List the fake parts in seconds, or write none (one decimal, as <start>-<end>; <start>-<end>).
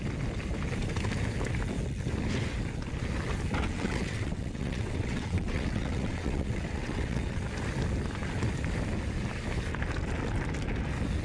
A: 3.6-7.4